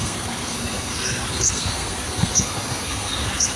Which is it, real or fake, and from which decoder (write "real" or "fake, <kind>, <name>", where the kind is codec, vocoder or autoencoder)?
fake, codec, SNAC